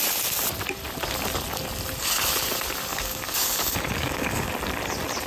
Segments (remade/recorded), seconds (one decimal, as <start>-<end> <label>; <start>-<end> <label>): 0.0-2.9 recorded; 2.9-4.5 remade; 4.5-5.3 recorded